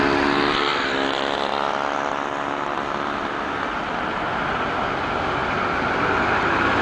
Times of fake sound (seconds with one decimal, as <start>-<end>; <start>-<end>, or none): none

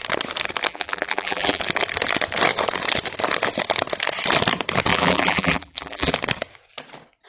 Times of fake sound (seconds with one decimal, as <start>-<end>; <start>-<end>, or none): 0.7-1.6; 4.9-6.1

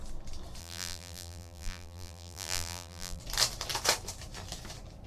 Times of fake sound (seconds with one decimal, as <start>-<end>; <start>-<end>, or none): 0.6-3.2

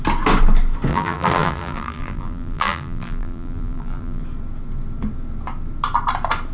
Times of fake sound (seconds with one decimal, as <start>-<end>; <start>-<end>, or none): 0.9-4.2

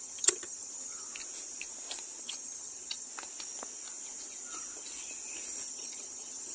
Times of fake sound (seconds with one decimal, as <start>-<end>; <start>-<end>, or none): 0.0-1.1; 2.2-3.1; 5.7-6.5

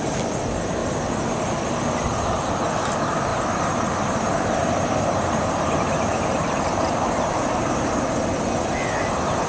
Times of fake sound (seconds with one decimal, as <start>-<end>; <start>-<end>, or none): 3.3-8.1

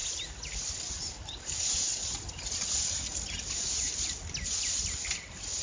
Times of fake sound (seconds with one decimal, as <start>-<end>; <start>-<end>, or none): none